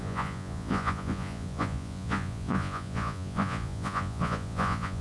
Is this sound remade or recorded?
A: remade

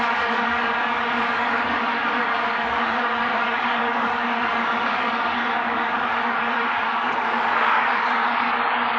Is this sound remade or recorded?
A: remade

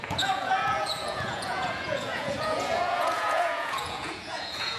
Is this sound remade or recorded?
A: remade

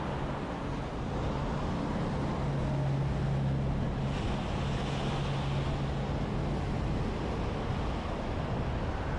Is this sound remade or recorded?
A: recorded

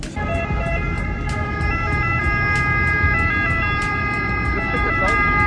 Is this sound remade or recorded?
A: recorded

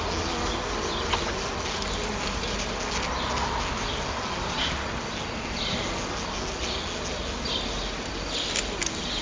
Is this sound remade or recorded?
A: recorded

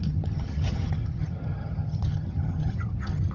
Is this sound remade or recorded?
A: remade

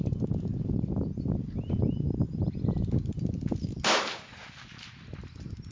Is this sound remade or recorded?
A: recorded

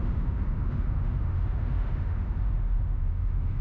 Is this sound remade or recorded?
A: remade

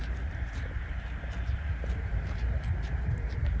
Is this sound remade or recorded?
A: remade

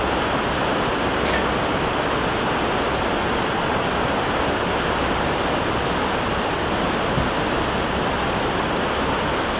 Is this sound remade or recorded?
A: recorded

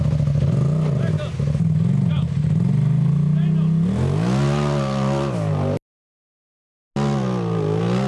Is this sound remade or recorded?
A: recorded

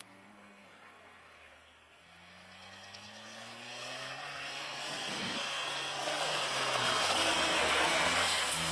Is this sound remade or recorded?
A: remade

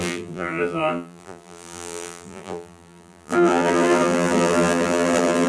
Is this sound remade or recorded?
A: remade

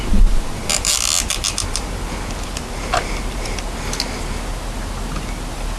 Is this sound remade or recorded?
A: recorded